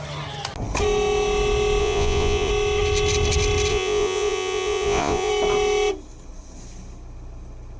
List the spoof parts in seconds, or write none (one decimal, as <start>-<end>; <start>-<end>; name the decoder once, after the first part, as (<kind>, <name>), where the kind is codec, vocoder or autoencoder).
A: 1.8-2.5 (vocoder, Vocos); 3.7-5.3